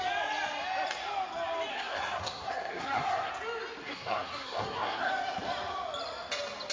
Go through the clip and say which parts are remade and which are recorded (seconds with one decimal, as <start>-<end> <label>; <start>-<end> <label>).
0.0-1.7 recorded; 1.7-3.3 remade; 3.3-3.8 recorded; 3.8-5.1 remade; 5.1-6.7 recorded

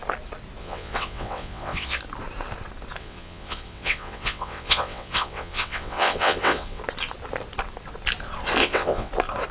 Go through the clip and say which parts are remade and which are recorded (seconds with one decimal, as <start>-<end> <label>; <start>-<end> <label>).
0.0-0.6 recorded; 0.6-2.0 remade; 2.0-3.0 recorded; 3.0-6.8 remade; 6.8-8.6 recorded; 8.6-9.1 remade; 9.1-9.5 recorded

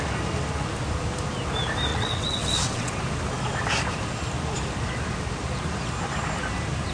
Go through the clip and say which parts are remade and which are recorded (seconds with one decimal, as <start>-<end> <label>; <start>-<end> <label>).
0.0-1.9 recorded; 1.9-2.9 remade; 2.9-6.9 recorded

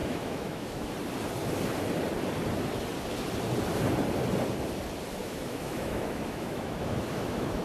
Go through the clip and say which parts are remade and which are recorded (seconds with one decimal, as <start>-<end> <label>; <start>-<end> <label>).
0.0-0.9 remade; 0.9-5.2 recorded; 5.2-7.6 remade